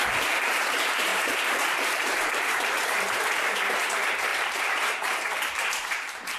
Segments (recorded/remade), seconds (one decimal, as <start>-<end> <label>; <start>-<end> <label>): 0.0-6.4 remade